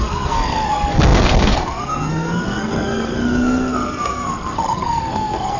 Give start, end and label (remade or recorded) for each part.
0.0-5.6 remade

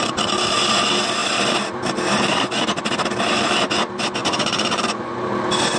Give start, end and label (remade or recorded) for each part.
0.0-4.2 recorded; 4.2-5.2 remade; 5.2-5.8 recorded